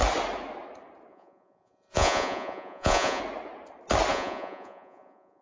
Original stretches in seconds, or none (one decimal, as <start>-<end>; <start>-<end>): 0.0-1.1; 3.2-4.1